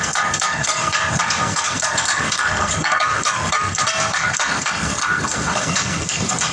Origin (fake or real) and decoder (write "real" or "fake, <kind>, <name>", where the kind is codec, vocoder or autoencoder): fake, codec, SNAC